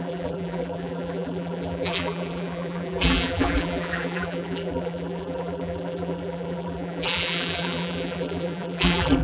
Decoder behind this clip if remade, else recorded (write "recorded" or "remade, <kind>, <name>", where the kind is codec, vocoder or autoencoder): remade, vocoder, BigVGAN v2